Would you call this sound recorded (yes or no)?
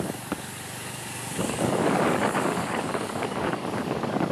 no